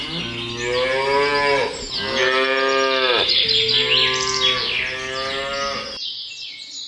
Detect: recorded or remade recorded